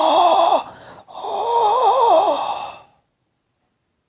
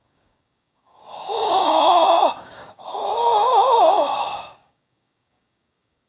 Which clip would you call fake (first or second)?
second